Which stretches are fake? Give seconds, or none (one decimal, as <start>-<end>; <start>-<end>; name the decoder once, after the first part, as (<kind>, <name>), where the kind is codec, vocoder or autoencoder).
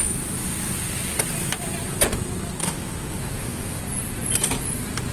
2.6-3.8 (autoencoder, DAC-VAE)